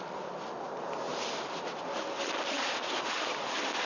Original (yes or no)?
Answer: yes